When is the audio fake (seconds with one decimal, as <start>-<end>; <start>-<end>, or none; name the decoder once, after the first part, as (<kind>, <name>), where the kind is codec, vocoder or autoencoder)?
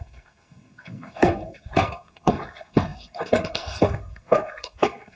0.0-5.2 (codec, SNAC)